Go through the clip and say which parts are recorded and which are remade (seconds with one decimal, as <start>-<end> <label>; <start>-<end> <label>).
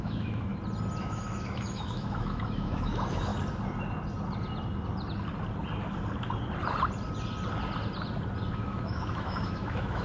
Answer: 0.0-0.5 remade; 0.5-1.0 recorded; 1.0-3.3 remade; 3.3-8.5 recorded; 8.5-10.0 remade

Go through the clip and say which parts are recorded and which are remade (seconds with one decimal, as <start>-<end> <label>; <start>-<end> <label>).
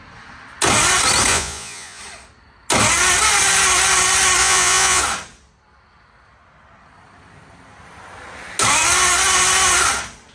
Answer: 0.0-1.3 recorded; 1.3-2.0 remade; 2.0-4.4 recorded; 4.4-5.0 remade; 5.0-10.3 recorded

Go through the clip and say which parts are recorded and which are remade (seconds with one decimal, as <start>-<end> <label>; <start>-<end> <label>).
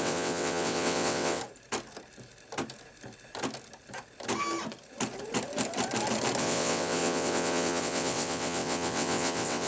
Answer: 0.0-1.4 remade; 1.4-6.4 recorded; 6.4-9.7 remade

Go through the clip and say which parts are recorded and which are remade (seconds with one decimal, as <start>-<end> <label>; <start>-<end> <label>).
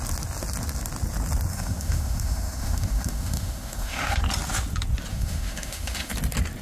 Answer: 0.0-1.5 recorded; 1.5-4.2 remade; 4.2-5.1 recorded; 5.1-6.1 remade; 6.1-6.6 recorded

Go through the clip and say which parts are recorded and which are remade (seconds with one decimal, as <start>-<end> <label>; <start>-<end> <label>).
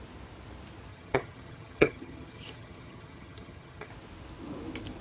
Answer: 0.0-0.9 recorded; 0.9-3.9 remade; 3.9-5.0 recorded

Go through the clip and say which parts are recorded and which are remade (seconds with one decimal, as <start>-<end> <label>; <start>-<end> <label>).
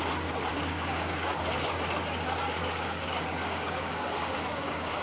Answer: 0.0-0.5 recorded; 0.5-1.7 remade; 1.7-2.6 recorded; 2.6-5.0 remade